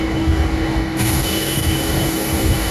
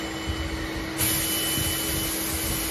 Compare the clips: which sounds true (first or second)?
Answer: second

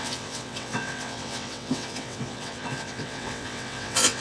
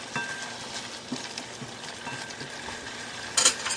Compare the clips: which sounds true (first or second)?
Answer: second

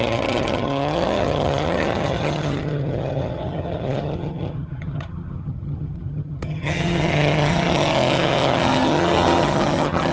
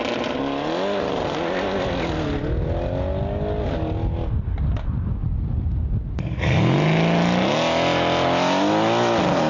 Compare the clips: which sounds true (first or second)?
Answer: second